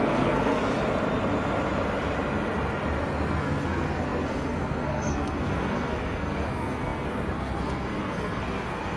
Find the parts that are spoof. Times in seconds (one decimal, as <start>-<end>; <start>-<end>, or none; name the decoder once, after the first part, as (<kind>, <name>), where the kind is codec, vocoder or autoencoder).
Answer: 0.0-0.6 (codec, SNAC); 3.3-9.0